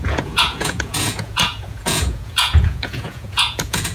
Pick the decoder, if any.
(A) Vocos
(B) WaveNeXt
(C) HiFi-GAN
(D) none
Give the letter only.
A